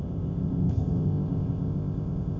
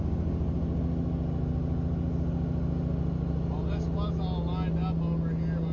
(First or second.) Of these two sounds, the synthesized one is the first